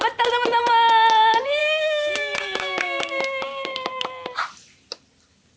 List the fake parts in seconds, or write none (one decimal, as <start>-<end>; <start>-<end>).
1.6-3.9